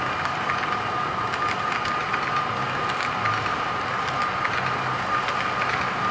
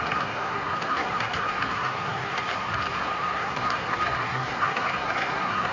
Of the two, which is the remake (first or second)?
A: second